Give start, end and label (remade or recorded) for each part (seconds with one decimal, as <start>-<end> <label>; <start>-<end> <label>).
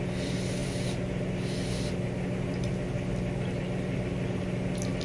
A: 0.0-5.0 recorded